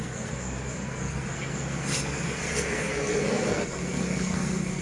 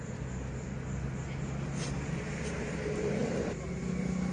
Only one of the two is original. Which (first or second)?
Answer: second